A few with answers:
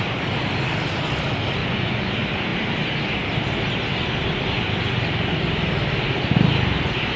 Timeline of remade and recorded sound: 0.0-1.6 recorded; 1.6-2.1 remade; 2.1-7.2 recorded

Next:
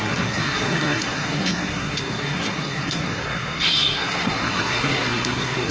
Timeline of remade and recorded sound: 0.0-5.7 remade

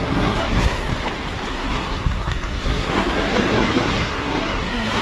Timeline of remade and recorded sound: 0.0-0.9 remade; 0.9-1.5 recorded; 1.5-5.0 remade

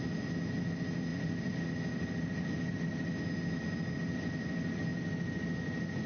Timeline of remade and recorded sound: 0.0-6.1 recorded

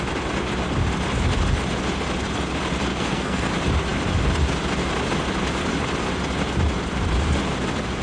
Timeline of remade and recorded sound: 0.0-2.9 recorded; 2.9-3.5 remade; 3.5-8.0 recorded